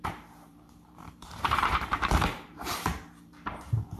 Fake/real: fake